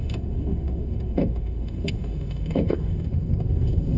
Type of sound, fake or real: fake